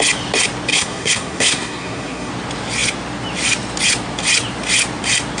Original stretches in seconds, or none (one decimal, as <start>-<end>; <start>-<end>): 0.0-0.7; 2.3-5.4